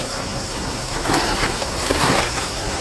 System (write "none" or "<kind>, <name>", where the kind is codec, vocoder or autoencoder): codec, SNAC